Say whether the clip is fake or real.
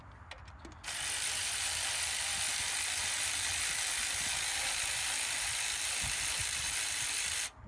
real